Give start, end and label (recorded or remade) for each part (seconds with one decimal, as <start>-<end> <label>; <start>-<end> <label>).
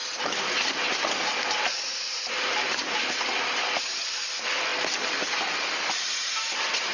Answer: 0.0-2.0 recorded; 2.0-4.7 remade; 4.7-5.7 recorded; 5.7-6.9 remade